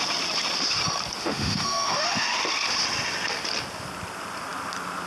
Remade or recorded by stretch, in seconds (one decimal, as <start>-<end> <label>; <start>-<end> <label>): 0.0-1.2 recorded; 1.2-2.4 remade; 2.4-5.1 recorded